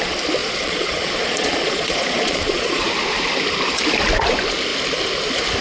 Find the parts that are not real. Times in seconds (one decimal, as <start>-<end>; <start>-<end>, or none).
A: 0.4-2.9